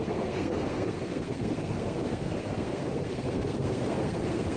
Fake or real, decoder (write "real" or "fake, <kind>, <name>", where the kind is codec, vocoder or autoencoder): fake, codec, SNAC